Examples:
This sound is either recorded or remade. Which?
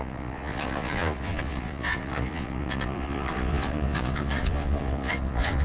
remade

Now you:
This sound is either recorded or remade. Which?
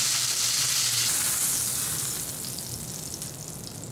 recorded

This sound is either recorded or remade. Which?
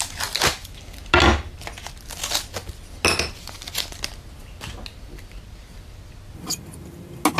recorded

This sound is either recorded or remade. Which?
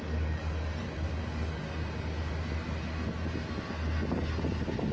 recorded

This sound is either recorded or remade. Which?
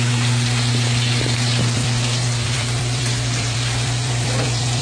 remade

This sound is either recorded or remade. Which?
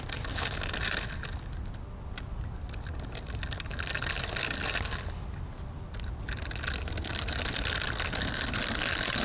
recorded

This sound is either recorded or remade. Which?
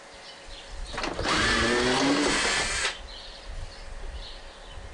recorded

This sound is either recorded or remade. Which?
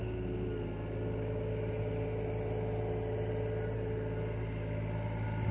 recorded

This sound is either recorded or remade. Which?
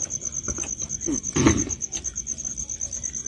recorded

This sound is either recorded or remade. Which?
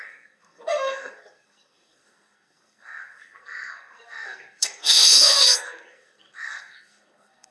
remade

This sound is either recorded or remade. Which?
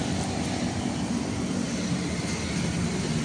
recorded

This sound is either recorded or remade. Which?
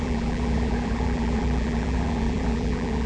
remade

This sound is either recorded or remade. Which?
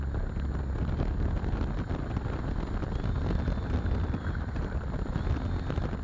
recorded